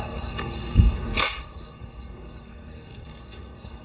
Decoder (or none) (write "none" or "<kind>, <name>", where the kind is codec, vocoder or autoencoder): codec, SNAC